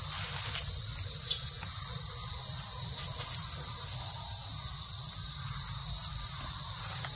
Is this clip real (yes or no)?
yes